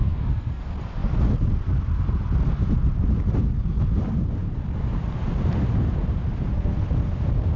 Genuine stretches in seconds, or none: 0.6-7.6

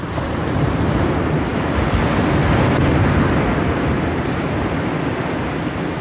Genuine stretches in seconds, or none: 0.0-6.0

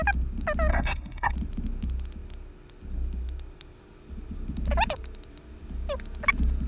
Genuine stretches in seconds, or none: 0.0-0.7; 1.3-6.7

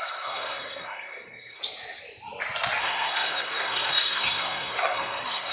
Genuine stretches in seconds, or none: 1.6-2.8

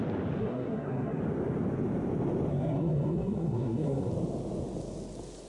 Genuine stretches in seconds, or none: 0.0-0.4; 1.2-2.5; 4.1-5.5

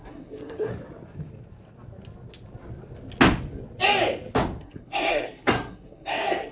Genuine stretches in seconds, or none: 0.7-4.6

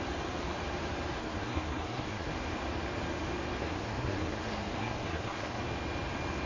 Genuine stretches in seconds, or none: 0.0-1.2; 2.3-3.6; 5.6-6.5